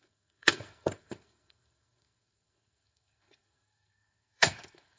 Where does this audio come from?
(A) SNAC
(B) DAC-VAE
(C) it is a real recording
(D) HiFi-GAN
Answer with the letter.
A